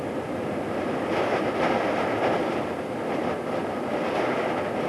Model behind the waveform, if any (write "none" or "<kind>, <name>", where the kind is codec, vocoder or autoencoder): none